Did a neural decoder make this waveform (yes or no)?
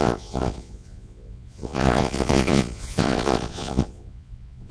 yes